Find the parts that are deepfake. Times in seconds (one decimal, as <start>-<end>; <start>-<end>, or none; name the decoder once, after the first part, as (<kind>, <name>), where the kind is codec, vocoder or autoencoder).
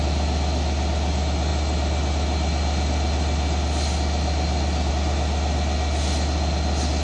none